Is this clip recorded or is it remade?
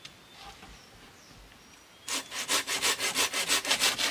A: recorded